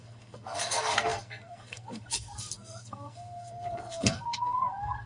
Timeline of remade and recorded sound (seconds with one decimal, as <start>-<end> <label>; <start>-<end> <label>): 0.0-5.1 remade